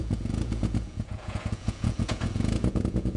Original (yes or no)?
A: no